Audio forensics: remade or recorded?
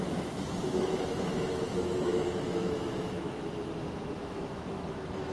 remade